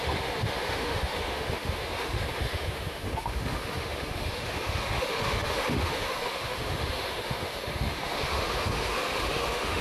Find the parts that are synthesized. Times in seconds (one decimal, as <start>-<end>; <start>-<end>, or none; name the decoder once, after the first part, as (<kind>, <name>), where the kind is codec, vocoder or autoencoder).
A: 0.0-9.8 (autoencoder, DAC-VAE)